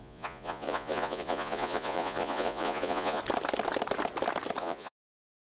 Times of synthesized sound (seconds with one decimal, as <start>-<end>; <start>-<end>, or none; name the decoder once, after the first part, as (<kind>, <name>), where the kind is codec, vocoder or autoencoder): 0.0-3.2 (vocoder, Vocos); 4.6-5.5